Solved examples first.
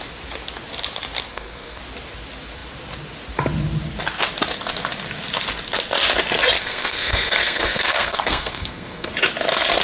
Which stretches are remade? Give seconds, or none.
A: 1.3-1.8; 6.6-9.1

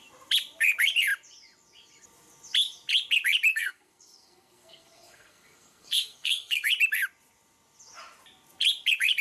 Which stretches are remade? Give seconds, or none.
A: 3.5-6.7

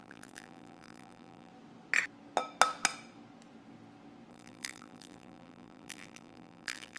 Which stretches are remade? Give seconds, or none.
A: 0.0-1.5; 4.3-7.0